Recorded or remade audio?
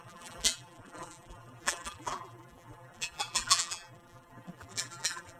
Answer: remade